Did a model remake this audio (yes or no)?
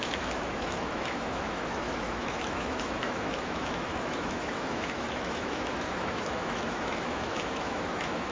yes